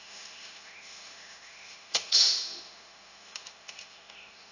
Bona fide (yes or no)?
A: no